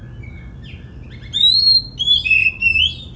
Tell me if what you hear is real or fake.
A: real